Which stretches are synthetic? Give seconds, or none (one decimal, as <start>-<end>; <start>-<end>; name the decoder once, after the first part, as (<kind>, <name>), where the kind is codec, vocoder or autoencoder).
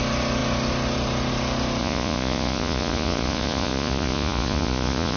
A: 1.8-5.2 (vocoder, Vocos)